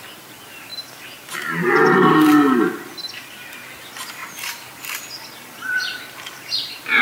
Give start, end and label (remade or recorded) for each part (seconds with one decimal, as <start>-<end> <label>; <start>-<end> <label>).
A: 0.0-4.2 recorded; 4.2-4.8 remade; 4.8-5.9 recorded; 5.9-7.0 remade